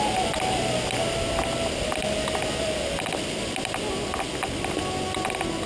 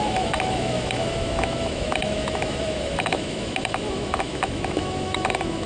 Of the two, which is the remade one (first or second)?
second